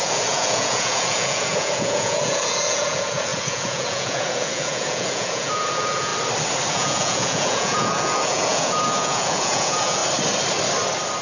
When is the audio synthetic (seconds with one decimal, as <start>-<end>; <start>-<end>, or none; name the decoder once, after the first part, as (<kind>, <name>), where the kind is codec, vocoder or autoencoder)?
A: 0.0-6.1 (vocoder, Vocos); 6.7-10.0